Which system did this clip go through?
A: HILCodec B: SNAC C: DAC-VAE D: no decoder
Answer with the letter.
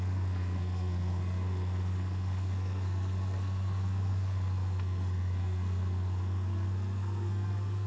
B